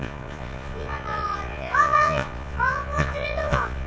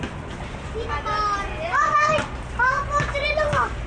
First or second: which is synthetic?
first